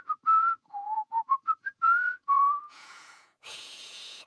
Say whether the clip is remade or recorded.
remade